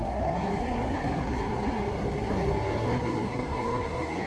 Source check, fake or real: fake